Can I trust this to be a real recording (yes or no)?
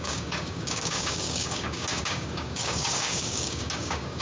no